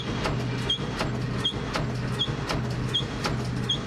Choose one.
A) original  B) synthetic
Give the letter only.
A